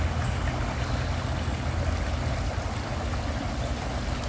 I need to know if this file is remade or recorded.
recorded